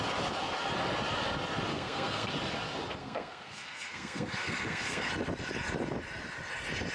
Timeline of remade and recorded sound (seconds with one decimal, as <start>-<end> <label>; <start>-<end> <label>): 0.0-1.7 recorded; 1.7-2.3 remade; 2.3-3.0 recorded; 3.0-5.1 remade; 5.1-6.9 recorded